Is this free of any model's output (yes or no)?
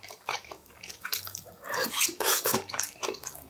no